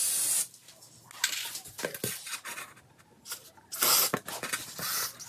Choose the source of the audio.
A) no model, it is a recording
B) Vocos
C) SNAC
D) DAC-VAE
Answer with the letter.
A